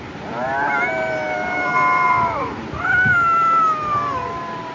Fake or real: real